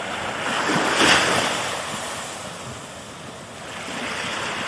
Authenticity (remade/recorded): recorded